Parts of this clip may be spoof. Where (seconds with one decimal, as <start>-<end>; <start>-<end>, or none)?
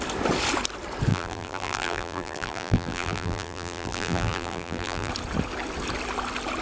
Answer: 1.1-5.1